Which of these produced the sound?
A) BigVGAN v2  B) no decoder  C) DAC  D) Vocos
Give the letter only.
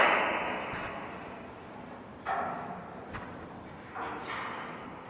B